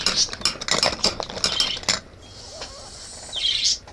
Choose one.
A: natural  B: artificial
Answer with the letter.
A